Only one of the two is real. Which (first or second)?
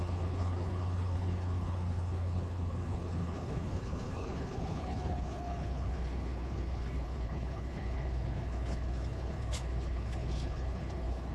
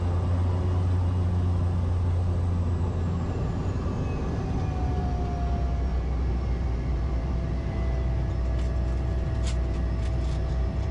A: second